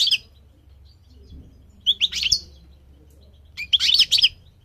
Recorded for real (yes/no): no